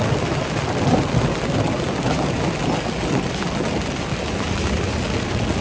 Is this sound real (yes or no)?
yes